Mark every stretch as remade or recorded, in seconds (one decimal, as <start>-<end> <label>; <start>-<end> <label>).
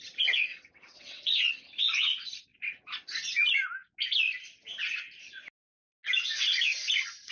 0.0-0.5 recorded; 0.5-1.5 remade; 1.5-7.3 recorded